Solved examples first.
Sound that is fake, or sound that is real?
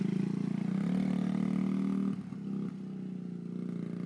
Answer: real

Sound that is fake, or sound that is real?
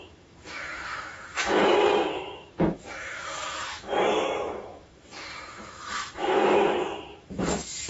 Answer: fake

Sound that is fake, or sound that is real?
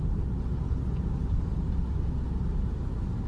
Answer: real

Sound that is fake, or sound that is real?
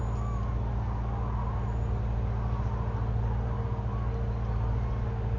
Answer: real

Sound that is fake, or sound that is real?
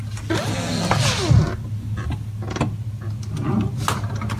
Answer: real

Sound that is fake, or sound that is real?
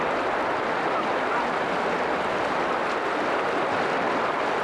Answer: real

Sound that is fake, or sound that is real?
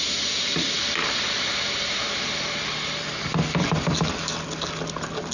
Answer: real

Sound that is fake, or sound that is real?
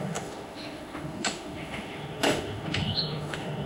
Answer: fake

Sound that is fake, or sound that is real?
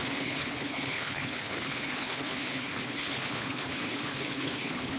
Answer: fake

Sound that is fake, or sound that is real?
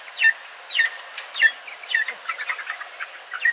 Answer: real